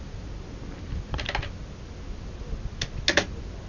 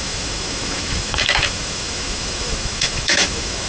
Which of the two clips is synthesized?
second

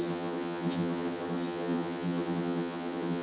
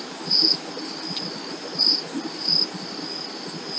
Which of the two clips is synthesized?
first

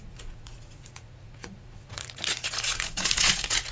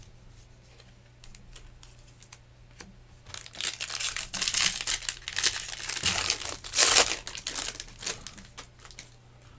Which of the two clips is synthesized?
first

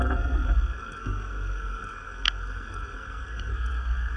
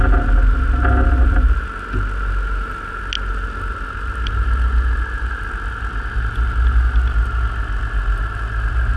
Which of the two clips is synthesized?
first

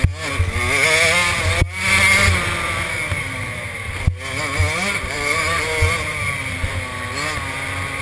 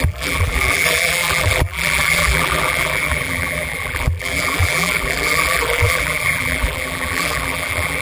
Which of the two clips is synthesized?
second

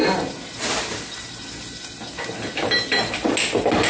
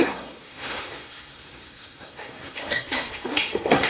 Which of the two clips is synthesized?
second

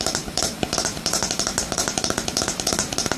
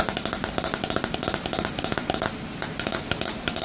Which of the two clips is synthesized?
first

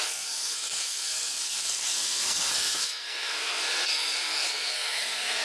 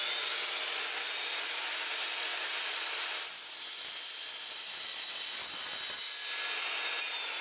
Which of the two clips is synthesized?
first